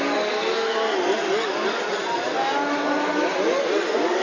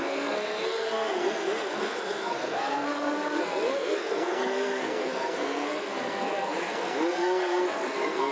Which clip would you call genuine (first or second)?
first